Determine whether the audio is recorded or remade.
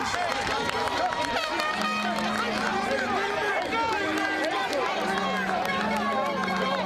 recorded